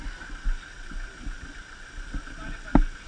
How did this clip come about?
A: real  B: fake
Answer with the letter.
A